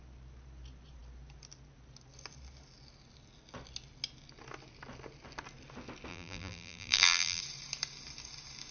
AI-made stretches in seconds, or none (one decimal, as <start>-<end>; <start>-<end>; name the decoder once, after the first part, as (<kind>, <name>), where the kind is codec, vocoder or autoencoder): 6.1-7.4 (vocoder, BigVGAN v2)